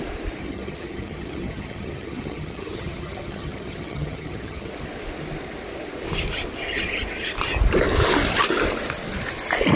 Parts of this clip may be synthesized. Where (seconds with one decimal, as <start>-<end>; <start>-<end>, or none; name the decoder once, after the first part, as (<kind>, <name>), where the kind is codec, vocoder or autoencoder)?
0.4-4.7 (vocoder, HiFi-GAN)